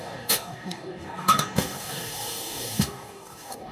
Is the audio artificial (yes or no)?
yes